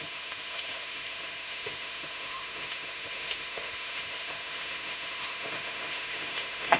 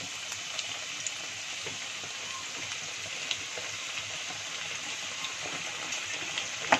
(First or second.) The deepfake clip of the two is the first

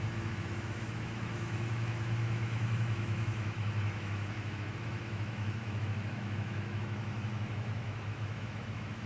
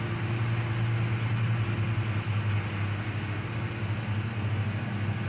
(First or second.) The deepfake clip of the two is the first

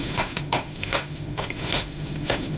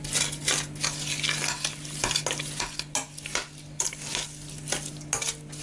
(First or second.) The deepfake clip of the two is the first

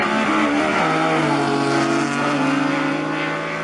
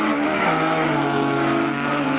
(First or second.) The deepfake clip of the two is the second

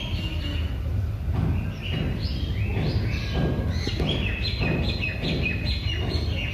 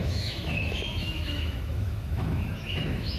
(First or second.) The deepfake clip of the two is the second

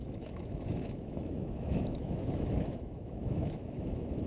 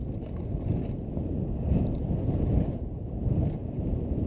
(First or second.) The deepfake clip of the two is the first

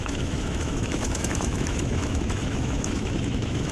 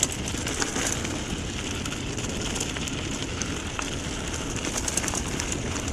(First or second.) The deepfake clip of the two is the first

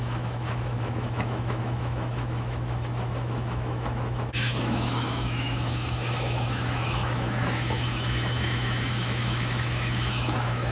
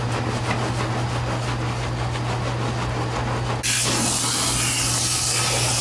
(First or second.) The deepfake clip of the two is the first